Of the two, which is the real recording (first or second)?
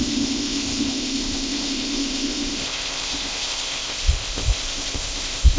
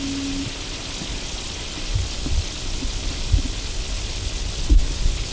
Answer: second